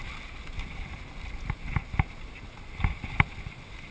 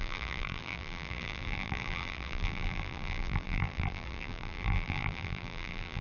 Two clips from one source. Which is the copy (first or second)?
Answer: second